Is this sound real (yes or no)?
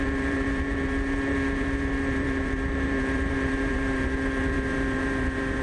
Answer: no